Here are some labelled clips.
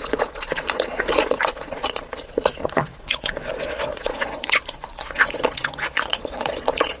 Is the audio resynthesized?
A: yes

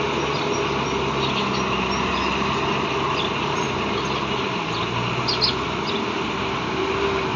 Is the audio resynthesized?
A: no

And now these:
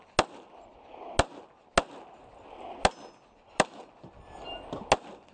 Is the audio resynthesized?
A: no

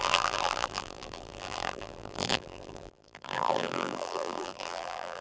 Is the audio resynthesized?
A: yes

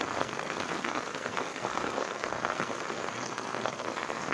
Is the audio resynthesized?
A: yes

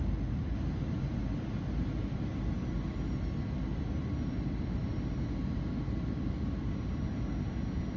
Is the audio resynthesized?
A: no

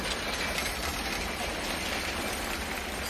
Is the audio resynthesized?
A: no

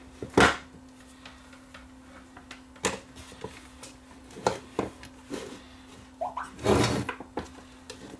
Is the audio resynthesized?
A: no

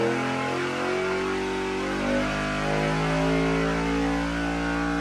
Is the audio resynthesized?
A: no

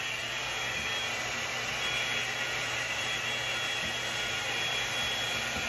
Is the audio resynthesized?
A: no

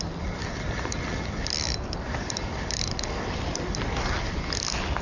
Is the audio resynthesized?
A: no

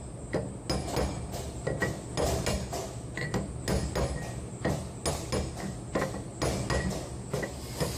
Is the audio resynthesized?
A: no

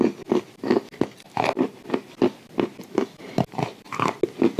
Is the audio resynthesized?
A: no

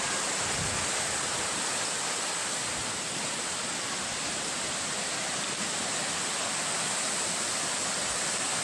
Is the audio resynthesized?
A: no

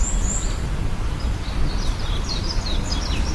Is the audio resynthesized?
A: no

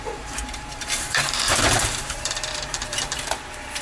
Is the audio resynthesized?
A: yes